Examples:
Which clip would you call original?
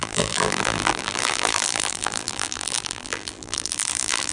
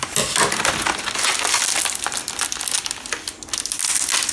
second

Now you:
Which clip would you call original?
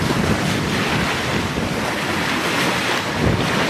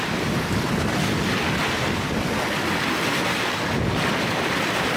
second